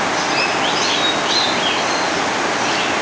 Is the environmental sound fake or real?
real